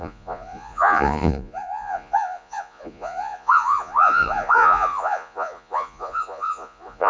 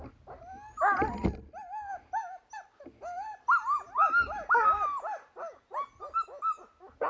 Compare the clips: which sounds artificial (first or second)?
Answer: first